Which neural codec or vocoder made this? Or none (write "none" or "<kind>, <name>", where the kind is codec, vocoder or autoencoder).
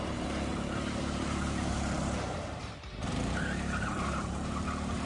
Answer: vocoder, BigVGAN v2